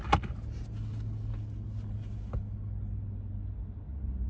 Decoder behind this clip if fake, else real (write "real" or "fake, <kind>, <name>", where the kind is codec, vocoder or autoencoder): real